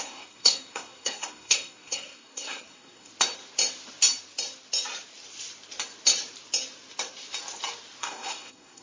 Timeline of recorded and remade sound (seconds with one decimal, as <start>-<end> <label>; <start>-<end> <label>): 0.0-3.1 remade; 3.1-8.0 recorded; 8.0-8.8 remade